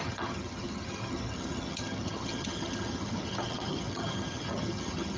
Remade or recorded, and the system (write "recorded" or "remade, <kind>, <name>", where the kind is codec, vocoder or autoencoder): remade, vocoder, HiFi-GAN